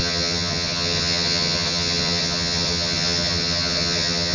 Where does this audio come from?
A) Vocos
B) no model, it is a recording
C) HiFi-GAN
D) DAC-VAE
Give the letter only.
C